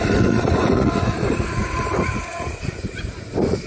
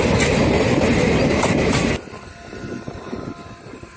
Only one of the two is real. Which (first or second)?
second